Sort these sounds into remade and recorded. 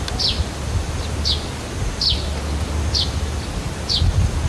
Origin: recorded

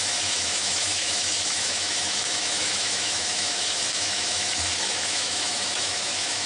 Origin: remade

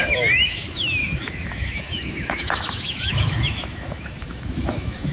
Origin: remade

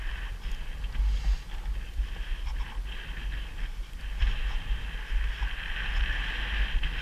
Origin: recorded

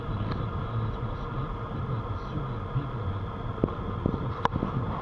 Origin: recorded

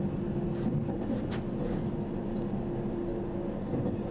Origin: recorded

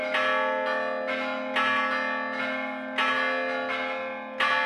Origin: recorded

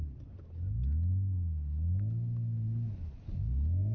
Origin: recorded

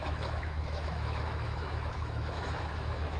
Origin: remade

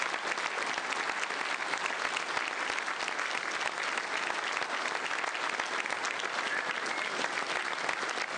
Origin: recorded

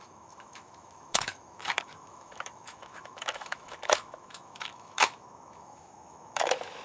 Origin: remade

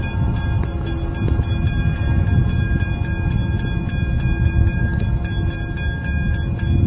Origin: recorded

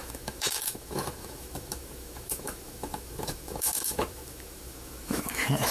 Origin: remade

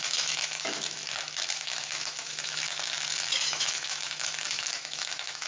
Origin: remade